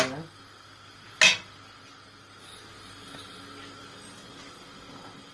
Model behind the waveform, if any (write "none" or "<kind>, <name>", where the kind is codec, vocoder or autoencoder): none